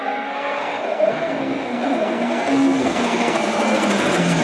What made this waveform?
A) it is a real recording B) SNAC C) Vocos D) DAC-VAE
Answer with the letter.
B